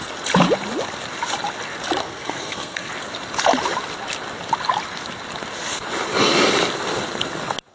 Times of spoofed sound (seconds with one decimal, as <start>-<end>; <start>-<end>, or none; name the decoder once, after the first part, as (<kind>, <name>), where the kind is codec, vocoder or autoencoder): 2.0-2.9 (codec, SNAC)